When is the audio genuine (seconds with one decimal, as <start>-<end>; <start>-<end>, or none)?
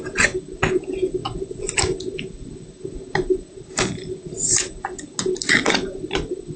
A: 0.0-6.6